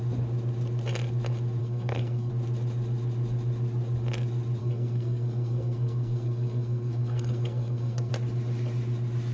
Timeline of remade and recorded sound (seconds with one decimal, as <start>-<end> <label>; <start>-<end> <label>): 0.0-1.6 recorded; 1.6-2.3 remade; 2.3-4.6 recorded; 4.6-8.1 remade; 8.1-9.3 recorded